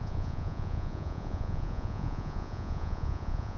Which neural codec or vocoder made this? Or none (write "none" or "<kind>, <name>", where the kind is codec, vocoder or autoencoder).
vocoder, Vocos